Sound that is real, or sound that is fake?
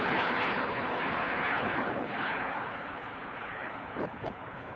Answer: fake